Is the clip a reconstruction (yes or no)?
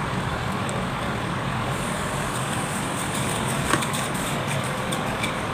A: yes